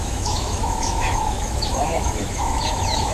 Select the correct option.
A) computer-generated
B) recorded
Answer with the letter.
A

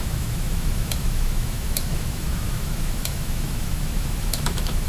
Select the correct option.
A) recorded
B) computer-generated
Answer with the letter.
B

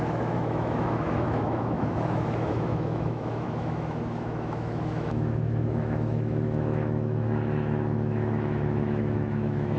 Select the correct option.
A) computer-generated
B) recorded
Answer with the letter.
A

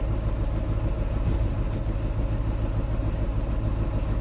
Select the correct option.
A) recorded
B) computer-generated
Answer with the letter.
A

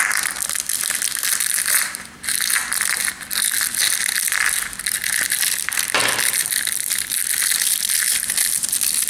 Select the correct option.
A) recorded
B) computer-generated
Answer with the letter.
A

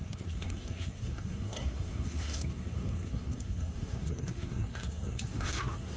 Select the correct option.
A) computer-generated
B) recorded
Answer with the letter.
A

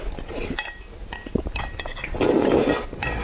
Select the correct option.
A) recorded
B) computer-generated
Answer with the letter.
A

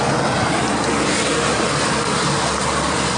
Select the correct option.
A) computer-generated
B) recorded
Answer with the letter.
B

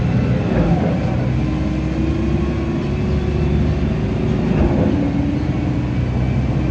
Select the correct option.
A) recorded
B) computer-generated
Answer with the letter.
A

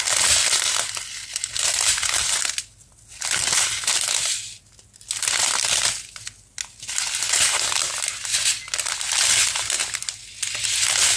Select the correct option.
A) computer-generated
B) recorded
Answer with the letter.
B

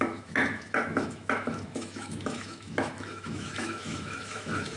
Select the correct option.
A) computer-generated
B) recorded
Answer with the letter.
A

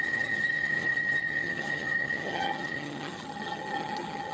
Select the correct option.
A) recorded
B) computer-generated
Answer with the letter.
B